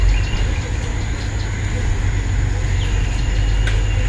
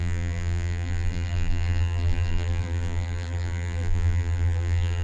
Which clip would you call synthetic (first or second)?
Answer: second